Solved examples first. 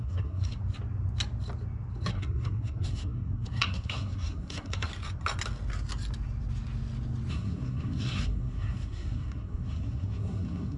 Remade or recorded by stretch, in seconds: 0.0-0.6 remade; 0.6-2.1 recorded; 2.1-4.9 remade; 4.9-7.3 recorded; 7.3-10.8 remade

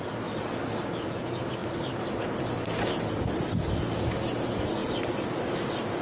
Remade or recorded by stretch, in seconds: 0.0-6.0 recorded

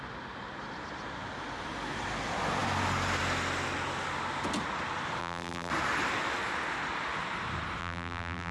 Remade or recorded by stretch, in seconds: 0.0-5.2 recorded; 5.2-5.7 remade; 5.7-7.8 recorded; 7.8-8.5 remade

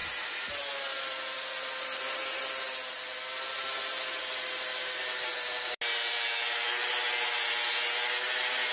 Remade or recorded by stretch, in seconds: 0.0-8.7 recorded

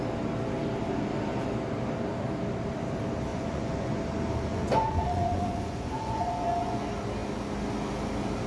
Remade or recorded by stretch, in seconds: 0.0-3.3 recorded; 3.3-4.0 remade; 4.0-4.5 recorded; 4.5-6.8 remade; 6.8-8.5 recorded

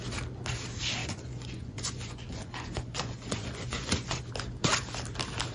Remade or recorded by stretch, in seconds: 0.0-1.0 recorded; 1.0-4.2 remade; 4.2-5.5 recorded